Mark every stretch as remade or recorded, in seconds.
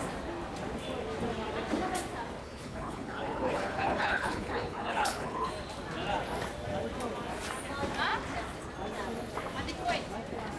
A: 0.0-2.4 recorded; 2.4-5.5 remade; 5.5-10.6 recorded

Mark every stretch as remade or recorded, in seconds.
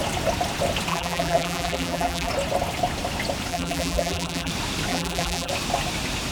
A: 0.0-0.9 recorded; 0.9-2.3 remade; 2.3-3.5 recorded; 3.5-4.5 remade; 4.5-4.9 recorded; 4.9-5.5 remade; 5.5-6.3 recorded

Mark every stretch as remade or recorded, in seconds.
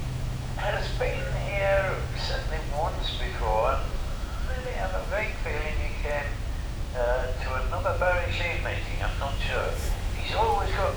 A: 0.0-1.5 remade; 1.5-3.5 recorded; 3.5-5.3 remade; 5.3-6.9 recorded; 6.9-10.1 remade; 10.1-11.0 recorded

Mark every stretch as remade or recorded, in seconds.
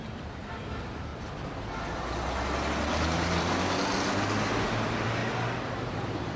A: 0.0-1.1 remade; 1.1-2.9 recorded; 2.9-3.9 remade; 3.9-4.7 recorded; 4.7-5.2 remade; 5.2-5.9 recorded; 5.9-6.4 remade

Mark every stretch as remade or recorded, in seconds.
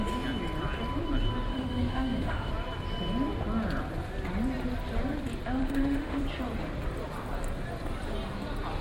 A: 0.0-1.5 recorded; 1.5-2.5 remade; 2.5-5.6 recorded; 5.6-6.2 remade; 6.2-8.8 recorded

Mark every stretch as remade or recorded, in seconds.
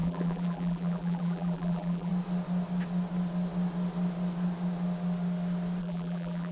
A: 0.0-2.1 remade; 2.1-5.8 recorded; 5.8-6.5 remade